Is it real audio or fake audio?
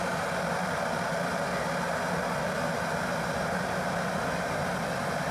real